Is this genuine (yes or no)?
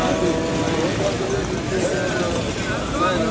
yes